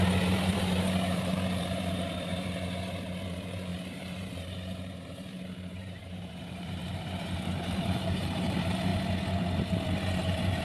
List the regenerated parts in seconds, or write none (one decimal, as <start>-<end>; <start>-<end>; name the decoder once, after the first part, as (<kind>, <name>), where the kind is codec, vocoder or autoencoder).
0.0-8.9 (vocoder, BigVGAN v2); 10.0-10.6